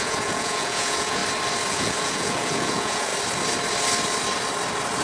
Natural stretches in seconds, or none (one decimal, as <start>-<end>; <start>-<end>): 1.2-1.7; 3.1-5.0

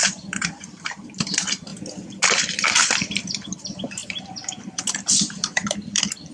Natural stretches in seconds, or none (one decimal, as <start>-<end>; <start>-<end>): 1.7-2.3

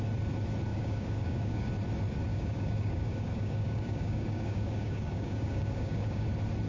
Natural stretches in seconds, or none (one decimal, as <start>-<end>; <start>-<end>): 0.0-0.7; 1.7-2.3; 6.3-6.7

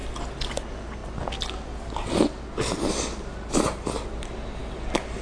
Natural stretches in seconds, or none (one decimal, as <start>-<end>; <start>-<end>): 0.0-5.2